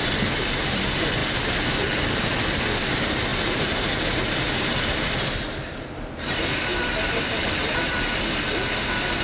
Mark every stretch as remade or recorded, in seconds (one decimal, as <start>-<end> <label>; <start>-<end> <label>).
0.0-3.3 recorded; 3.3-8.4 remade; 8.4-9.2 recorded